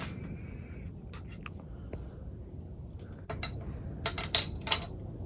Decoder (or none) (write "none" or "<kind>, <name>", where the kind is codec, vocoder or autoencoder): none